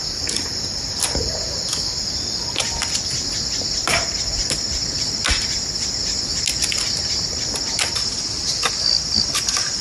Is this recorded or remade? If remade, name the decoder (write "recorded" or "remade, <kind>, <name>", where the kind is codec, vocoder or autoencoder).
recorded